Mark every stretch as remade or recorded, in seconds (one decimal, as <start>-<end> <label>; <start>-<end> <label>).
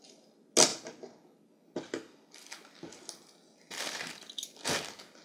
0.0-5.2 recorded